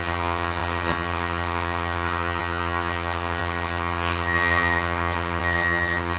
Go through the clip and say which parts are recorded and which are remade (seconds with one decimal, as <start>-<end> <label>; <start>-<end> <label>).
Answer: 0.0-6.2 remade